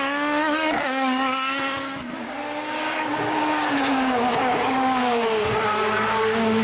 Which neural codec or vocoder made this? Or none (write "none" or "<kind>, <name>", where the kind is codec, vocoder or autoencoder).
codec, DAC